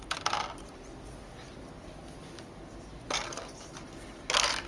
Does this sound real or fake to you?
real